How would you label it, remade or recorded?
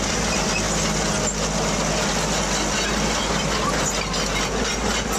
recorded